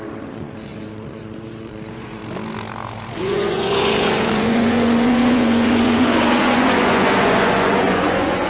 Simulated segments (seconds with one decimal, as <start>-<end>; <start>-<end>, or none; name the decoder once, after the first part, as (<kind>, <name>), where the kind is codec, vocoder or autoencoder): 0.0-2.2 (vocoder, Vocos); 3.2-8.5